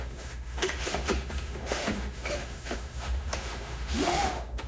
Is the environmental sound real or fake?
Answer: fake